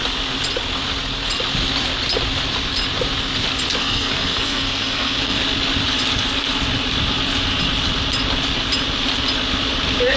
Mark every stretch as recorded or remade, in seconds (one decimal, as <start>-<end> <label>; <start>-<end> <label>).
0.0-3.8 recorded; 3.8-5.4 remade; 5.4-10.2 recorded